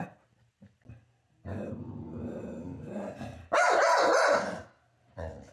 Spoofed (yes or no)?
no